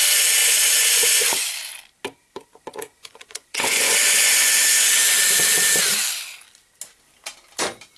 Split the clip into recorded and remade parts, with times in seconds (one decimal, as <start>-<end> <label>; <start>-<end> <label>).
0.0-0.4 recorded; 0.4-1.5 remade; 1.5-2.2 recorded; 2.2-4.9 remade; 4.9-8.0 recorded